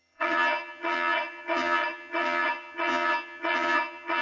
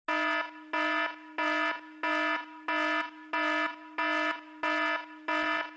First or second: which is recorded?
second